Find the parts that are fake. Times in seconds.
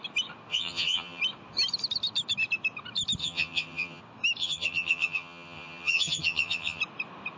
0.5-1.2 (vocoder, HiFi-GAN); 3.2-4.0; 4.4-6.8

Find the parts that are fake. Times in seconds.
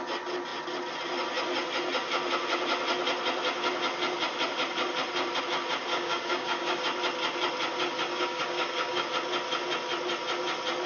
5.9-6.8 (codec, DAC); 8.1-9.1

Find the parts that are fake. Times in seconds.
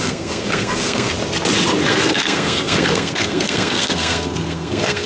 0.0-1.1 (codec, SNAC); 1.9-5.1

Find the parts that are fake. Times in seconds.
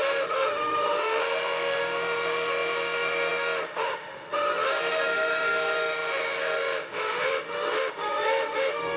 0.0-9.0 (autoencoder, DAC-VAE)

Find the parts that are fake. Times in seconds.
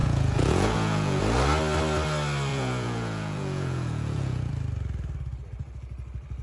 0.0-1.2 (vocoder, Vocos); 2.5-4.5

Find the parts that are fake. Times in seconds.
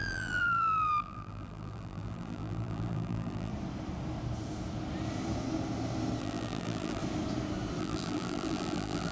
0.0-3.5 (vocoder, BigVGAN v2); 6.2-7.0; 7.8-9.1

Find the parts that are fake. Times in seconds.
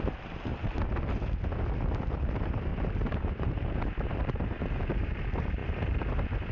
0.0-0.5 (vocoder, BigVGAN v2); 2.2-2.7; 3.3-6.5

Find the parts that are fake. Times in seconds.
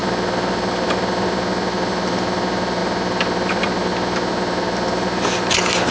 none